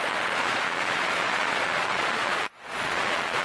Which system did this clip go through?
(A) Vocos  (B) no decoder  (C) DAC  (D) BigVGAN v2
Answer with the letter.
A